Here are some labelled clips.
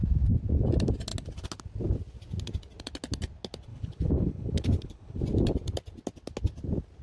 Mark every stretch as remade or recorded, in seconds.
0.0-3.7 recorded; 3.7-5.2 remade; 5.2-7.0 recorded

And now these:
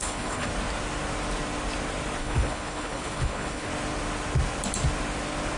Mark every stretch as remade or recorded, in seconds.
0.0-0.5 remade; 0.5-2.2 recorded; 2.2-3.7 remade; 3.7-5.6 recorded

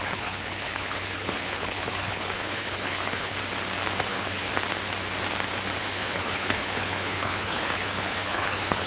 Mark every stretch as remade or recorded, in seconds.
0.0-3.3 remade; 3.3-4.1 recorded; 4.1-4.5 remade; 4.5-5.8 recorded; 5.8-8.9 remade

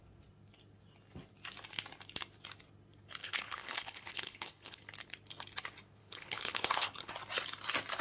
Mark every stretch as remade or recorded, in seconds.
0.0-3.2 recorded; 3.2-4.8 remade; 4.8-6.0 recorded; 6.0-7.1 remade; 7.1-8.0 recorded

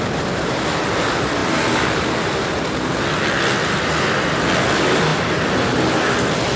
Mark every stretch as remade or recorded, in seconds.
0.0-6.6 recorded

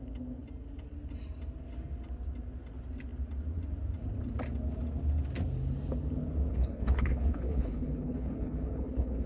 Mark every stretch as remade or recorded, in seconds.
0.0-6.5 recorded; 6.5-9.3 remade

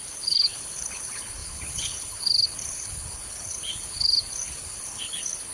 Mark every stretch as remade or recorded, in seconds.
0.0-5.5 remade

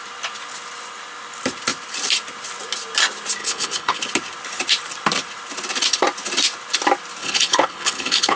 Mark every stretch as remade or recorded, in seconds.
0.0-3.4 recorded; 3.4-4.0 remade; 4.0-7.2 recorded; 7.2-8.4 remade